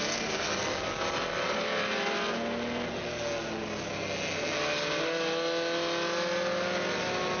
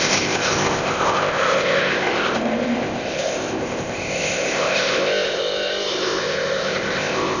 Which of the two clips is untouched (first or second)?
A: first